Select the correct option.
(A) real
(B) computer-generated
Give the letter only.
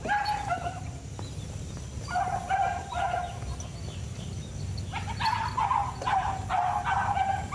A